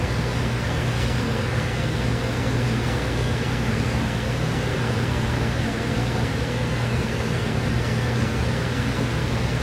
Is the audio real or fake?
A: fake